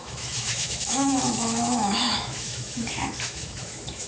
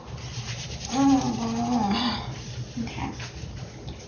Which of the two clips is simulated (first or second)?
first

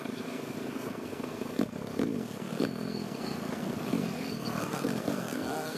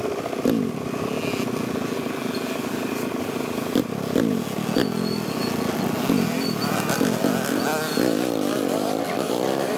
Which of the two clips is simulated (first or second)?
first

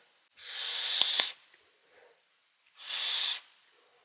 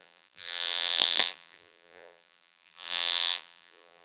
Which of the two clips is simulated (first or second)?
second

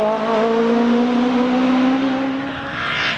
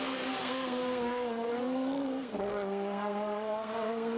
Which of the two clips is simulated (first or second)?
second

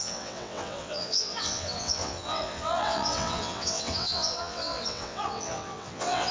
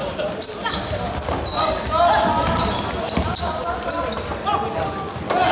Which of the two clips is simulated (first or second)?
first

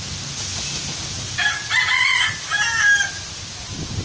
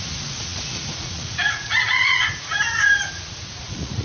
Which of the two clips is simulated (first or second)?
second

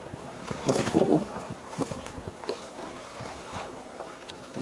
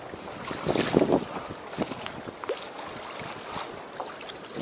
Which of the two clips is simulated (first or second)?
first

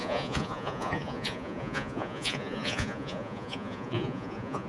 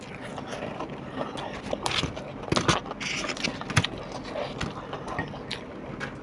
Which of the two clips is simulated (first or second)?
first